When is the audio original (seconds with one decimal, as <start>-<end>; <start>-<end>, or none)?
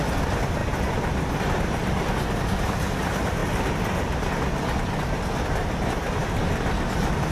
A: 0.0-7.3